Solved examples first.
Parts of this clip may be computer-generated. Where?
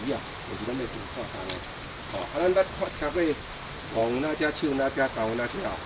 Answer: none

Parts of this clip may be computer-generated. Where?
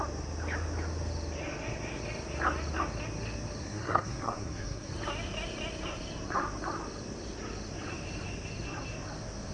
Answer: 3.6-4.9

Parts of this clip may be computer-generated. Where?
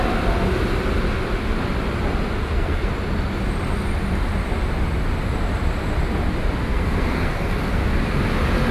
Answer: 2.4-2.9; 6.7-7.8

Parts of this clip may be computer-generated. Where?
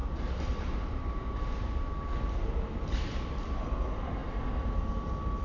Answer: none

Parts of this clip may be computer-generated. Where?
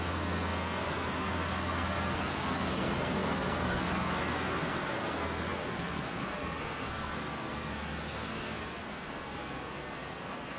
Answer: 0.0-10.6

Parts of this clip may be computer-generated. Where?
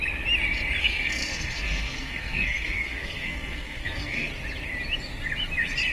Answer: 0.8-4.3